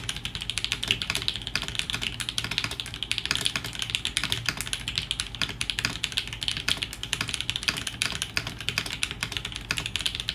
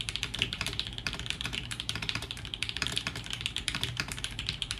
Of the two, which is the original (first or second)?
first